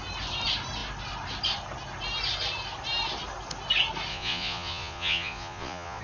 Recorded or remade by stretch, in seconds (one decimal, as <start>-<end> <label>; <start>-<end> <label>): 0.0-4.1 recorded; 4.1-6.0 remade